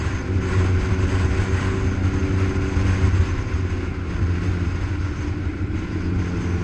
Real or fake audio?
real